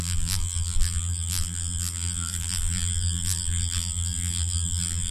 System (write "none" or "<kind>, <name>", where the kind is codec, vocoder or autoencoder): vocoder, BigVGAN v2